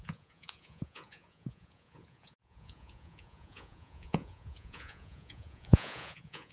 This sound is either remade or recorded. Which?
remade